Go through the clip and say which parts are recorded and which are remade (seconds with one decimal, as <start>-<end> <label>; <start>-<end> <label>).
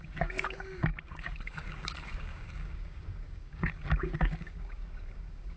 0.0-5.6 remade